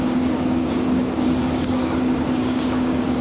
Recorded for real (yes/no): no